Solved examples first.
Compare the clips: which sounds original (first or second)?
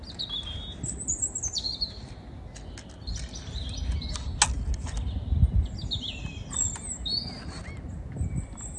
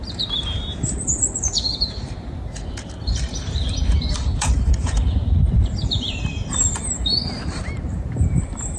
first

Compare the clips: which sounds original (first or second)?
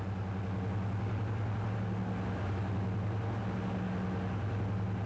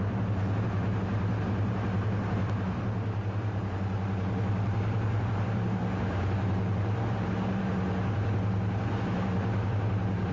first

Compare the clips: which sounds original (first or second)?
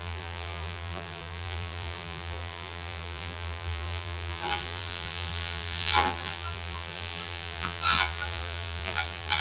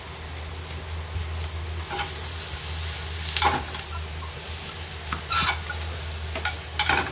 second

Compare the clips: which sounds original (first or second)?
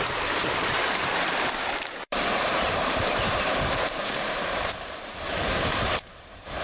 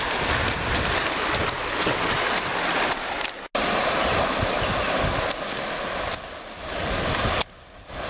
second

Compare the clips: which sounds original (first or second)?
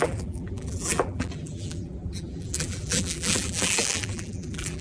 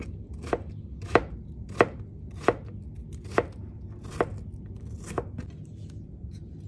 second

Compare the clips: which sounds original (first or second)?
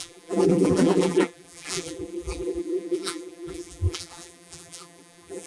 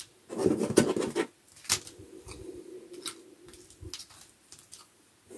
second